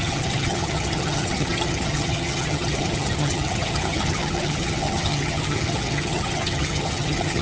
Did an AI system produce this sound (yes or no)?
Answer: yes